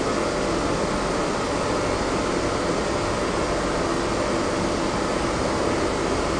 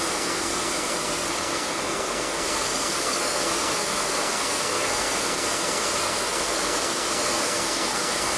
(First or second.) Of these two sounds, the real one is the first